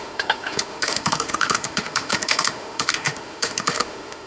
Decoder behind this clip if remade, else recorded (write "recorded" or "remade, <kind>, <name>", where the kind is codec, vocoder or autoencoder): remade, autoencoder, DAC-VAE